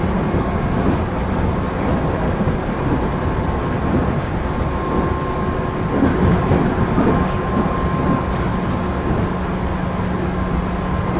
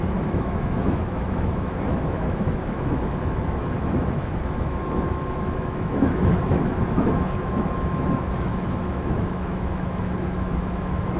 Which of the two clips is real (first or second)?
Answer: first